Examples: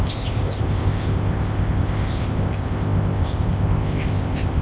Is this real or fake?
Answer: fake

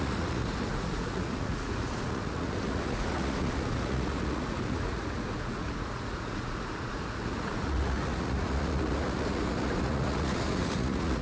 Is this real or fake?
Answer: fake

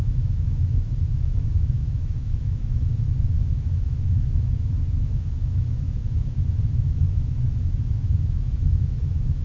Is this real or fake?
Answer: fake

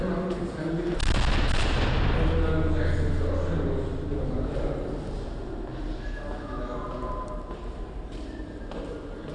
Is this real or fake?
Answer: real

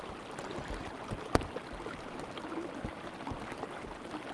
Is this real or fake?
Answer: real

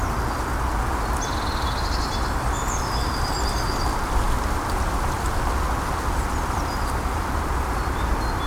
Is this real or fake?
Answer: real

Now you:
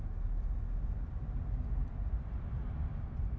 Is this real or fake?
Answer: real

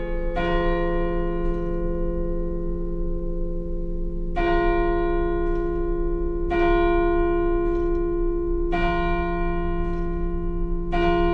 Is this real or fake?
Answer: real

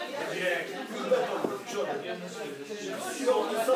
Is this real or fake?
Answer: real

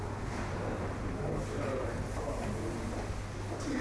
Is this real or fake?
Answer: real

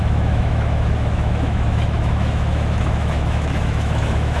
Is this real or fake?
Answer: fake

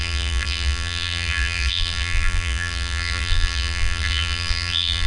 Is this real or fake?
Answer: fake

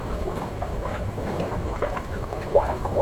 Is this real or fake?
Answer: fake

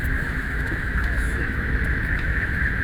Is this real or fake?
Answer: fake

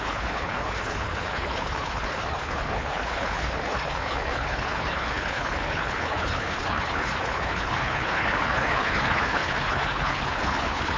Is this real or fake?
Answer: fake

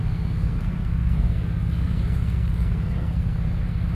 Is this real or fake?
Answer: fake